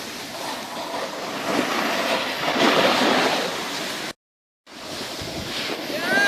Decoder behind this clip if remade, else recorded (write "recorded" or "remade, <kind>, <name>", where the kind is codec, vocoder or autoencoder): recorded